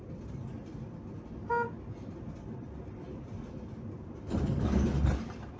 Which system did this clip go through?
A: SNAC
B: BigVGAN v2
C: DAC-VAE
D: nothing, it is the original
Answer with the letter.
D